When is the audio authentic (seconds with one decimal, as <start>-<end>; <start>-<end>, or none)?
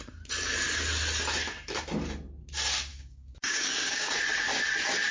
0.0-2.9; 4.1-5.1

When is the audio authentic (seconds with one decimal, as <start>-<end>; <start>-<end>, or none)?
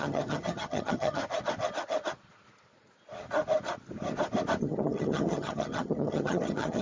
1.2-4.6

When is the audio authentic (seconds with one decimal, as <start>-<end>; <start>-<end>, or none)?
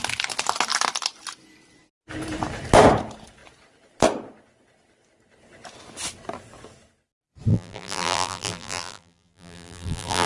0.0-7.5